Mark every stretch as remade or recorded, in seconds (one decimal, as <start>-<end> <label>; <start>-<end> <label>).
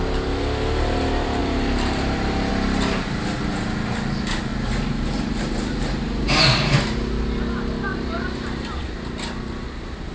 0.0-1.4 recorded; 1.4-2.5 remade; 2.5-4.5 recorded; 4.5-6.4 remade; 6.4-7.9 recorded; 7.9-8.8 remade; 8.8-10.1 recorded